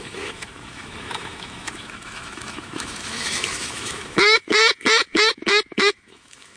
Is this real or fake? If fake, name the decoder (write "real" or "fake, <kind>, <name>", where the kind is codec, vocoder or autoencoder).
fake, autoencoder, DAC-VAE